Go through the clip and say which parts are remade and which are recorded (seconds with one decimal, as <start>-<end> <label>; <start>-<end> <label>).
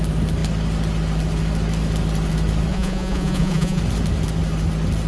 0.0-2.7 recorded; 2.7-3.8 remade; 3.8-5.1 recorded